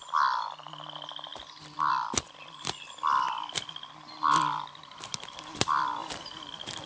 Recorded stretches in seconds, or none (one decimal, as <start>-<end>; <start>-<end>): 0.0-6.9